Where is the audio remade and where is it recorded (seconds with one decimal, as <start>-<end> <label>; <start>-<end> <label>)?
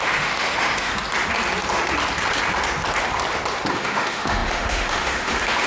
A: 0.0-0.9 remade; 0.9-3.7 recorded; 3.7-5.7 remade